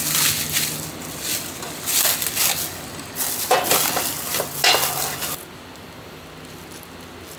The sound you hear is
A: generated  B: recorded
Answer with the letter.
B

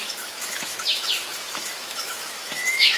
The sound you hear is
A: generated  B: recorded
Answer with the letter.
A